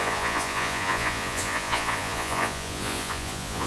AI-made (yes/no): yes